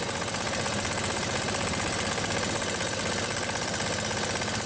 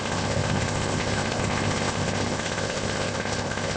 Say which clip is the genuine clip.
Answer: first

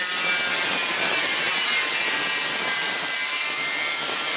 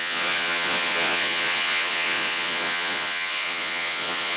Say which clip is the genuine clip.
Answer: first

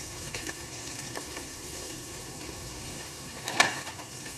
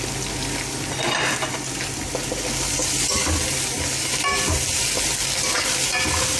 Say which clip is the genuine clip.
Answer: second